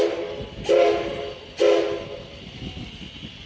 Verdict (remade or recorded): recorded